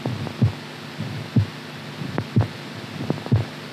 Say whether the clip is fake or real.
real